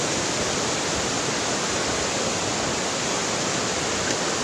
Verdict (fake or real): real